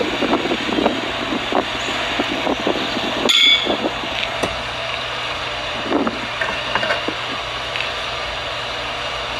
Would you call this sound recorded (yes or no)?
yes